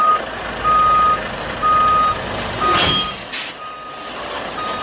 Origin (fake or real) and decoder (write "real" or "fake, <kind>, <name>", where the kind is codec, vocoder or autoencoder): real